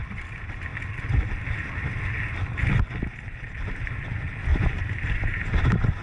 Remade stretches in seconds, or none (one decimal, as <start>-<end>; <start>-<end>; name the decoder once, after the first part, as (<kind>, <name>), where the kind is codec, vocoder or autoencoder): 4.5-5.4 (vocoder, BigVGAN v2)